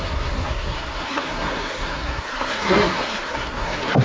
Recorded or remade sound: remade